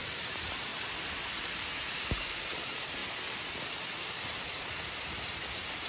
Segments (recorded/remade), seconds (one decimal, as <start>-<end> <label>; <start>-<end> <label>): 0.0-0.7 remade; 0.7-2.1 recorded; 2.1-3.0 remade; 3.0-4.4 recorded; 4.4-5.9 remade